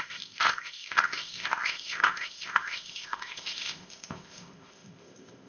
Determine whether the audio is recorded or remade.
remade